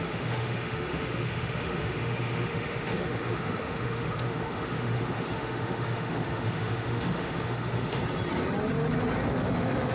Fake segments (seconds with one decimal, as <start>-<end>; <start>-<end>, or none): 0.0-8.0; 9.3-9.9